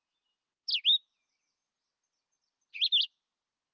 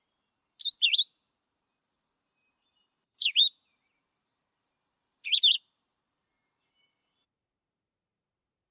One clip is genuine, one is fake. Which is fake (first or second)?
second